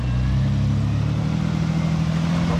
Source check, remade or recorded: recorded